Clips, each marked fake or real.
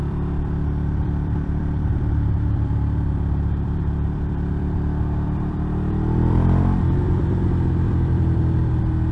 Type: fake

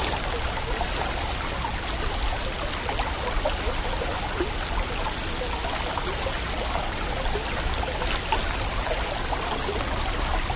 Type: real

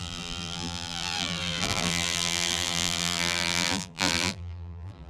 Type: fake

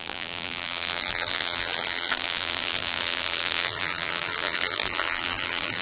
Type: fake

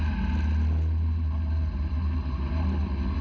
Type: real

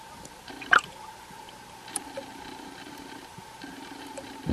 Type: fake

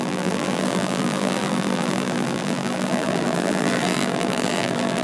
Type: fake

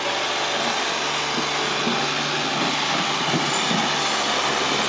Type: real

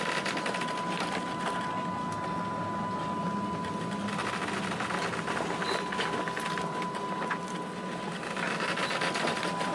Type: real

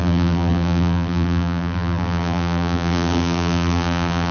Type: fake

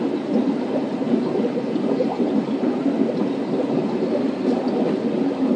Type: real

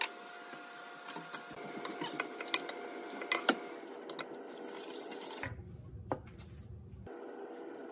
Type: real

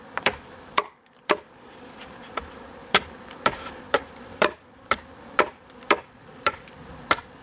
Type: fake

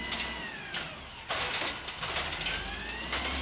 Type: real